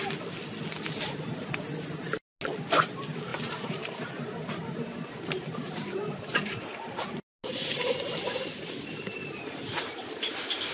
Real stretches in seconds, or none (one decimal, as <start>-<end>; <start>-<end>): 0.0-3.3; 7.0-10.7